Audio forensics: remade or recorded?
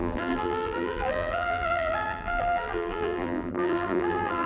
remade